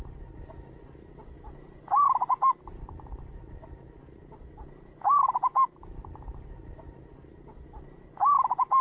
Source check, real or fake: real